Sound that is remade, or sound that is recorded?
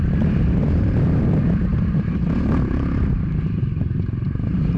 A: remade